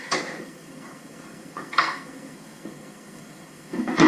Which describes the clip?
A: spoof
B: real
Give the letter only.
A